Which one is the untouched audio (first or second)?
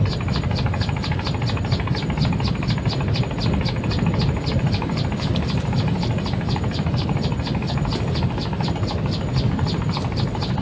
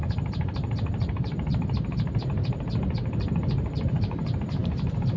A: first